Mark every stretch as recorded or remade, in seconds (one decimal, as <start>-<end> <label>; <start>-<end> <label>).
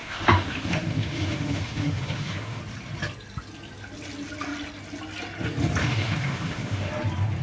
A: 0.0-2.6 remade; 2.6-5.8 recorded; 5.8-6.9 remade; 6.9-7.4 recorded